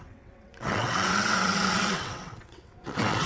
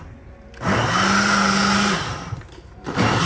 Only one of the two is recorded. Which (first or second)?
second